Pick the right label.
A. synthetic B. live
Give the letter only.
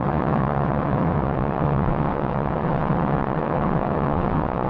A